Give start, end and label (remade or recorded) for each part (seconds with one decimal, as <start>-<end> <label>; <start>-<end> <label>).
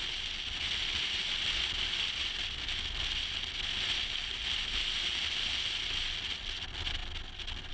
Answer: 0.0-7.7 recorded